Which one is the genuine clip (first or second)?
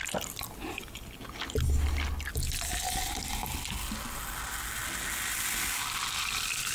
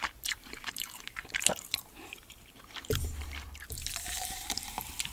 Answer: first